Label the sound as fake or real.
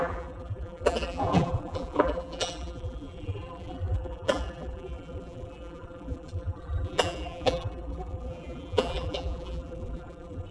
fake